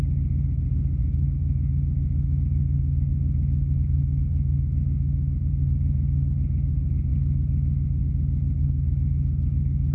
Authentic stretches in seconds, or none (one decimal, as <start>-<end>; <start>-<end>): 0.0-1.0; 5.5-9.9